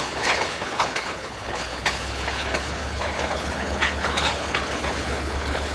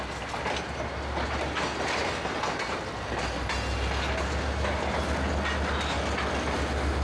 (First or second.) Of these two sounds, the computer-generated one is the first